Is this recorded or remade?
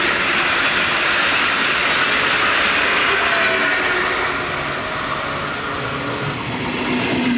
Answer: recorded